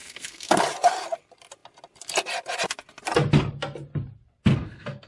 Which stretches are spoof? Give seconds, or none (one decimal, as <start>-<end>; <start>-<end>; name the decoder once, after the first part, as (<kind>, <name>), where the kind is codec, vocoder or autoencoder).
0.0-0.6 (codec, SNAC); 4.5-5.1